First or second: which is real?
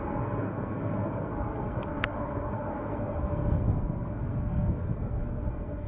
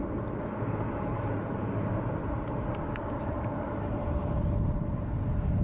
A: second